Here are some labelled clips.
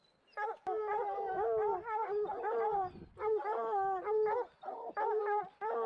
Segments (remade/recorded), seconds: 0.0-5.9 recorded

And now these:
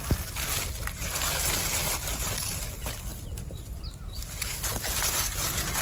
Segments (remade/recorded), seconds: 0.0-3.1 recorded; 3.1-4.2 remade; 4.2-5.8 recorded

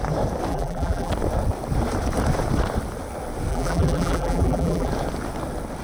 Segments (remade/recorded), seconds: 0.0-0.5 recorded; 0.5-1.1 remade; 1.1-3.5 recorded; 3.5-4.9 remade; 4.9-5.8 recorded